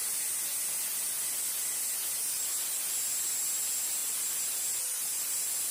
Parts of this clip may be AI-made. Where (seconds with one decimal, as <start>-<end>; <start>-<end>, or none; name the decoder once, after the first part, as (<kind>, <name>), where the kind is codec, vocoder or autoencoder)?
none